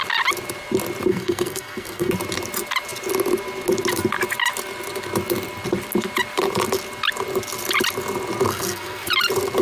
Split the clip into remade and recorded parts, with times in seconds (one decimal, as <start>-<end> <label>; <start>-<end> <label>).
0.0-1.1 recorded; 1.1-2.1 remade; 2.1-8.5 recorded; 8.5-9.1 remade; 9.1-9.6 recorded